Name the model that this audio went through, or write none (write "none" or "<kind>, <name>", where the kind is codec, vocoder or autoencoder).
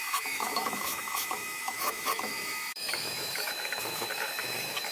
autoencoder, DAC-VAE